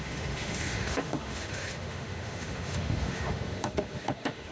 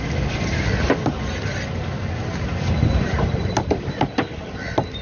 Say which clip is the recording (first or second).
second